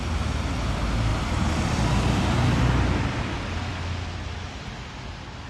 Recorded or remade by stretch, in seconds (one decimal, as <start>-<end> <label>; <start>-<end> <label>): 0.0-5.5 recorded